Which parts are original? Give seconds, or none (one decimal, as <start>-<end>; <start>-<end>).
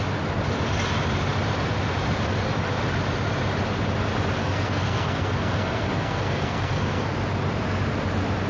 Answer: 0.0-4.4; 7.1-8.5